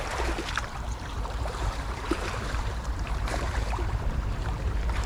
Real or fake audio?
fake